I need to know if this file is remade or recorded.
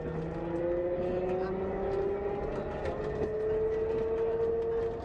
recorded